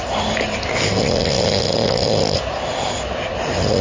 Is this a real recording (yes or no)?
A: yes